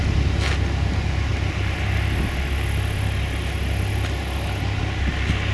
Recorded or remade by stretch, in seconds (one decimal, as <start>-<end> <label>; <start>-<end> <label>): 0.0-5.5 recorded